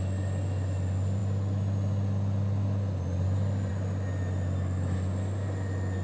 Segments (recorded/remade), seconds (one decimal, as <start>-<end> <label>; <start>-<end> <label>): 0.0-6.0 recorded